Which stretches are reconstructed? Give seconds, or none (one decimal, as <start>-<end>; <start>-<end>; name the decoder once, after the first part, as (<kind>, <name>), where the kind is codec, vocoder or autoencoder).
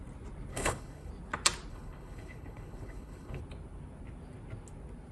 0.5-1.1 (codec, HILCodec); 1.7-3.4